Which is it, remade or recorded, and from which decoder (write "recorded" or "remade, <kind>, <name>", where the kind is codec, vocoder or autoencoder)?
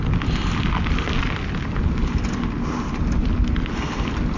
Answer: recorded